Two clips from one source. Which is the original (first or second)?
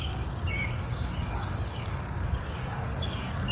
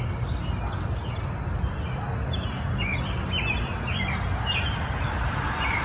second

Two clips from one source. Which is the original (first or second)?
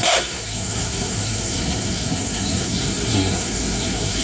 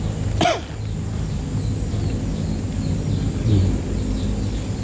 second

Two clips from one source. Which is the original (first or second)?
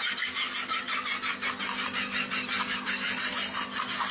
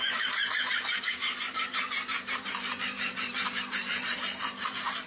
first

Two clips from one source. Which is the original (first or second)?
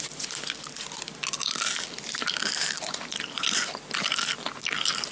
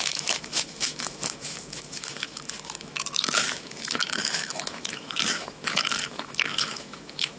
first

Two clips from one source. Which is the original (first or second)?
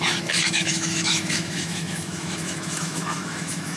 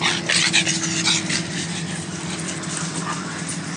second